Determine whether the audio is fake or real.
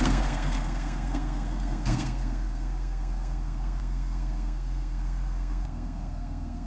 fake